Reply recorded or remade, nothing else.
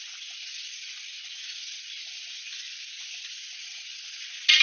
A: recorded